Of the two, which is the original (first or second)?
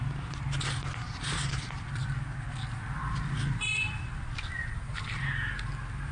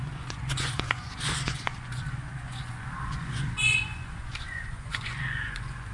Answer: first